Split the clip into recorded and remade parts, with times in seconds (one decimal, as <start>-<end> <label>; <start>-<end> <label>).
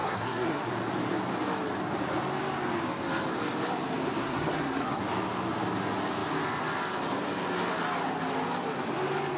0.0-0.7 remade; 0.7-4.2 recorded; 4.2-5.0 remade; 5.0-9.4 recorded